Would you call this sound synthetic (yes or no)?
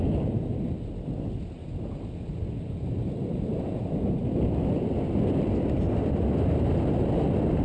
no